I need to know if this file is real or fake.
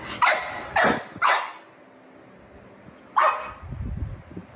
real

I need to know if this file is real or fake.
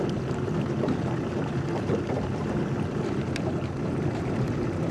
real